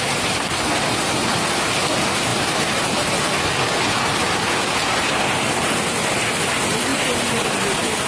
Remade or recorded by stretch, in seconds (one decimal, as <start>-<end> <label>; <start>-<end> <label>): 0.0-8.1 recorded